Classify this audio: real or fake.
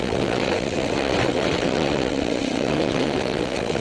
fake